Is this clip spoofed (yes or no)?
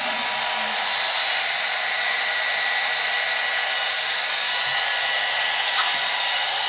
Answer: no